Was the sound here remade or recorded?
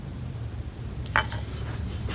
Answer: recorded